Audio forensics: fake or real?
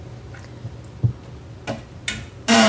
real